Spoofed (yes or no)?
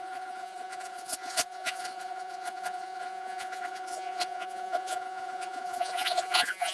yes